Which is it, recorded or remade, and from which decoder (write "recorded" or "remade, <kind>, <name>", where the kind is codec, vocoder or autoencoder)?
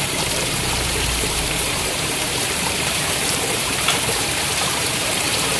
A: remade, vocoder, BigVGAN v2